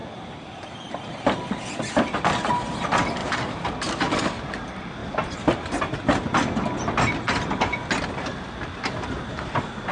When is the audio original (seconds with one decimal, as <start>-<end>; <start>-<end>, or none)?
0.0-3.2; 4.5-5.0; 5.8-9.9